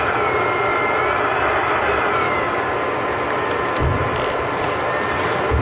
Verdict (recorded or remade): recorded